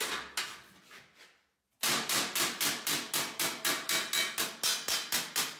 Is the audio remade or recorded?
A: recorded